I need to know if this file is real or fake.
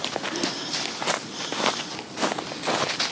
real